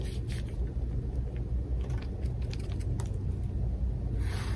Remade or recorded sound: recorded